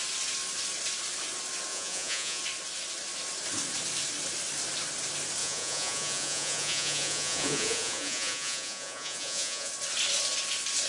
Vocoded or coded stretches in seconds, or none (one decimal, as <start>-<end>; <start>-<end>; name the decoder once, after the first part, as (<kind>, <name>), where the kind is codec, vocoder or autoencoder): 1.7-2.4 (vocoder, Vocos); 5.4-9.7